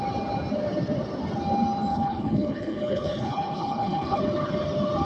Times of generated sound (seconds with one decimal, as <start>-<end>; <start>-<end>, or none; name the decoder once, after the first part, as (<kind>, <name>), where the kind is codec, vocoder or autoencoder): 1.9-4.2 (codec, HILCodec)